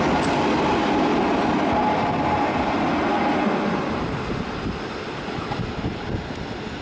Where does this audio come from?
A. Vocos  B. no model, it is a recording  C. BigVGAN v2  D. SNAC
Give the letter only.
B